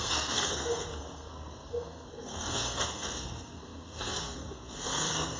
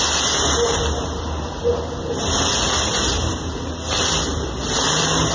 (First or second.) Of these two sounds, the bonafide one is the second